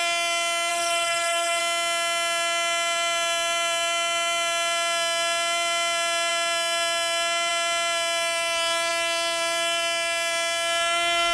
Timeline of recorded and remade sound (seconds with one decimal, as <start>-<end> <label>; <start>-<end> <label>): 0.0-0.7 recorded; 0.7-1.6 remade; 1.6-11.3 recorded